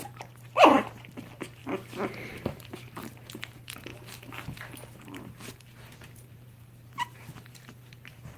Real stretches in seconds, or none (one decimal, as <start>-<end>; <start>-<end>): 1.6-2.3; 3.9-4.6